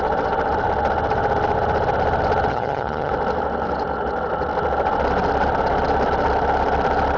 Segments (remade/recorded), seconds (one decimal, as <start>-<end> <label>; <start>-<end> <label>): 0.0-2.5 recorded; 2.5-3.1 remade; 3.1-7.2 recorded